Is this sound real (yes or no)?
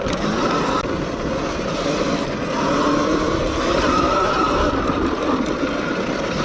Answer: yes